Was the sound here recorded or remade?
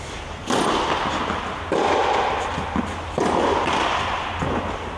recorded